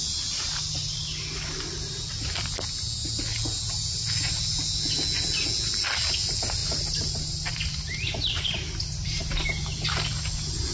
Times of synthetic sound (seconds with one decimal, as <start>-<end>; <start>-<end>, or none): none